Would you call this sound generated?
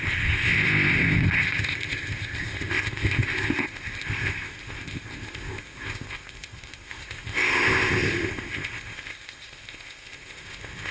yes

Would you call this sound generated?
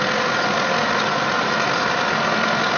no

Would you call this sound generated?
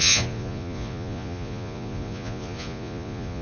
yes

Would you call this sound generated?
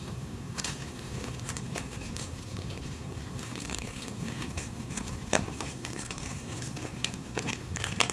yes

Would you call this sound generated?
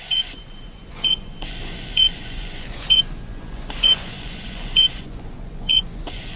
yes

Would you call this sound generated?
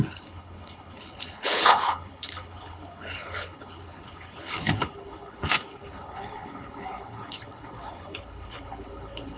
yes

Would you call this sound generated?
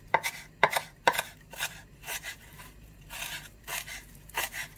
yes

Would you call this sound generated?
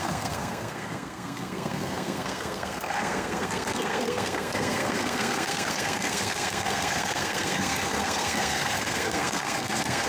yes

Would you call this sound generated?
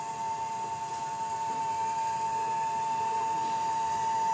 no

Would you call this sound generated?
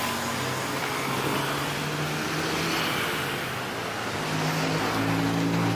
no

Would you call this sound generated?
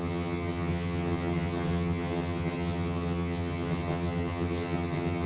yes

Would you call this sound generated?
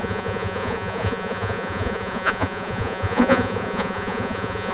yes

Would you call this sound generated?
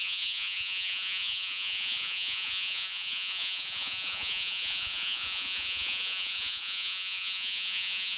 yes